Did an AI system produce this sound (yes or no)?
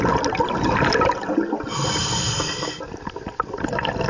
no